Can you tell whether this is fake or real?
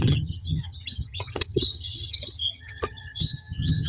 fake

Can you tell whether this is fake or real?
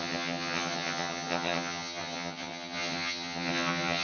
fake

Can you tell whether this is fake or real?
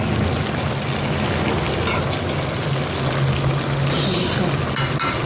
real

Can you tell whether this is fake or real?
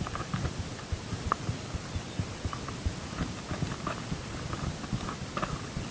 real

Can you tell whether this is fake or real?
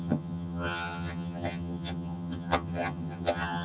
fake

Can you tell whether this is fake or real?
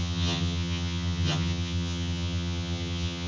fake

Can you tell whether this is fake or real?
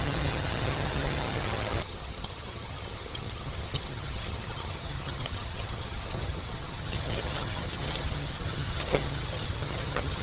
fake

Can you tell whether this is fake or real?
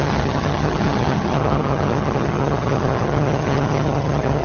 fake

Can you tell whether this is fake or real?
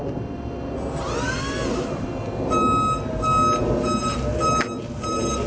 real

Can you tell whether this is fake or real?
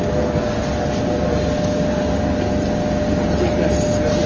real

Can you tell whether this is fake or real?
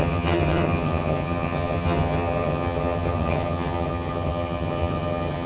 fake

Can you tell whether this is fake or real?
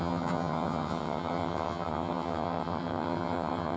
fake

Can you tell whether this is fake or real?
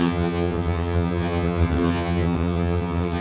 fake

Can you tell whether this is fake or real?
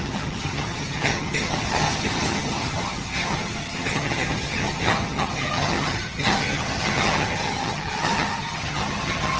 fake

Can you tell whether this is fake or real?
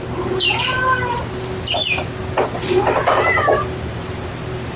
real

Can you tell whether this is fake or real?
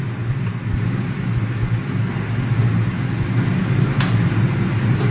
real